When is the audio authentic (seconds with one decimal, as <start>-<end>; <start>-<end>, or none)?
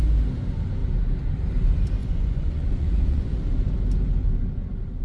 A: 0.0-2.0; 3.3-5.0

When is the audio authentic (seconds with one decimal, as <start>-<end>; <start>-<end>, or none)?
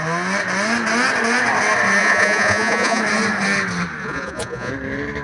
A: 0.0-2.0; 3.0-4.0; 4.7-5.2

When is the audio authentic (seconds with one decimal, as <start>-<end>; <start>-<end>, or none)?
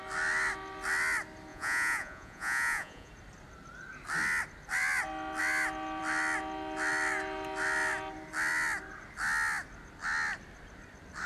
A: 0.0-1.5; 3.1-11.3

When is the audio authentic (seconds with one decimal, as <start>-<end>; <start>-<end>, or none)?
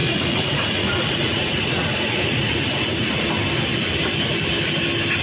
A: 3.1-5.2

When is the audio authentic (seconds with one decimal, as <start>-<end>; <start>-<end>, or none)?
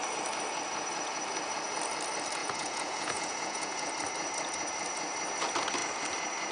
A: 0.0-2.4; 3.9-6.5